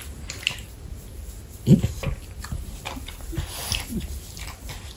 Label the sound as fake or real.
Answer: real